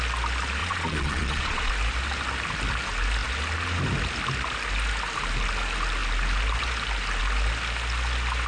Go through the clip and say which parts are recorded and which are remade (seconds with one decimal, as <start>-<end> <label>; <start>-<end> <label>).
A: 0.0-0.6 recorded; 0.6-1.7 remade; 1.7-8.5 recorded